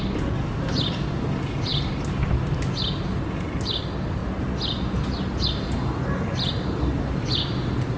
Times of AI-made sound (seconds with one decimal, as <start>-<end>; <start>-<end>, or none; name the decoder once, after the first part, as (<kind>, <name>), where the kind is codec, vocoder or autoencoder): none